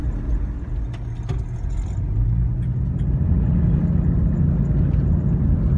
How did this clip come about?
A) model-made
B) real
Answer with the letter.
B